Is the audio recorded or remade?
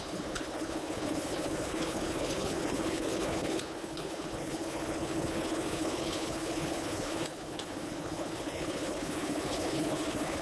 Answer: remade